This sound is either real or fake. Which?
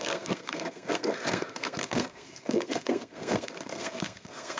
fake